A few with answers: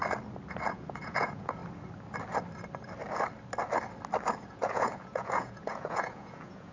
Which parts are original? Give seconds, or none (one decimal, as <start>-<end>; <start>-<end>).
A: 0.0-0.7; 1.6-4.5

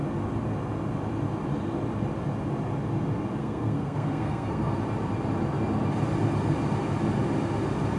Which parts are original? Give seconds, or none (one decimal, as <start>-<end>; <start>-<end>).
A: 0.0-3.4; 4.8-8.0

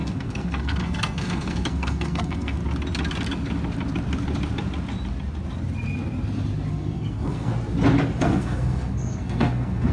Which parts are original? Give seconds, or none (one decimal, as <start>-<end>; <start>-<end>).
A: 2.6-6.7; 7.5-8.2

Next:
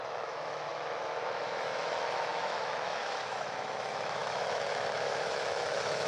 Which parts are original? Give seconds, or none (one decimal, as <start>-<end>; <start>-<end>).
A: none

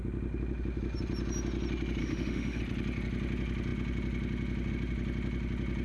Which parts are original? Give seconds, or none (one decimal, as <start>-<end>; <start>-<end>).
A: 0.0-2.0; 2.6-5.8

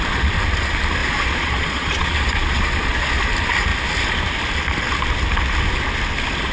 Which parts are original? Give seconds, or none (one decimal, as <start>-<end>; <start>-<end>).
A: 0.0-1.0; 3.1-6.5

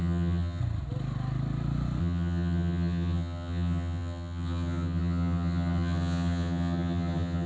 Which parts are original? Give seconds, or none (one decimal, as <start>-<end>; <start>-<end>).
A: 0.6-2.0

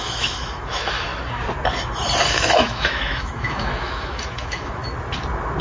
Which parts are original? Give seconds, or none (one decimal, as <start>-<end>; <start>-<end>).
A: 1.1-2.3; 4.8-5.6